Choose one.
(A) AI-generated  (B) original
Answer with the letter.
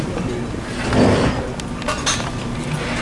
B